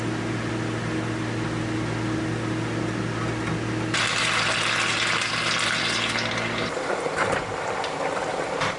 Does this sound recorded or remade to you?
recorded